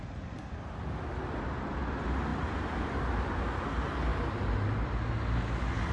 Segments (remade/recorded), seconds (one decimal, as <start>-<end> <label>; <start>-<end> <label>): 0.0-5.9 recorded